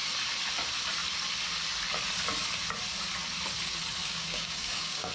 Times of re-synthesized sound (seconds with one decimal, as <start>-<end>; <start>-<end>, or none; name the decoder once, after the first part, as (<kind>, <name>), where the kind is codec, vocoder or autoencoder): 4.0-5.1 (codec, DAC)